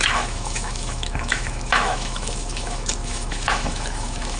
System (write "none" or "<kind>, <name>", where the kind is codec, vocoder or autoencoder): autoencoder, DAC-VAE